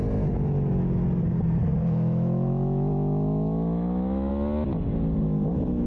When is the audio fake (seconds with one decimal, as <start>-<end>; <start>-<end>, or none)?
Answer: 1.7-4.3